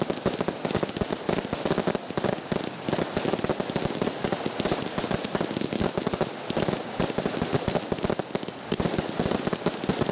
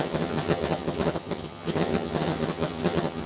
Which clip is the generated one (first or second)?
second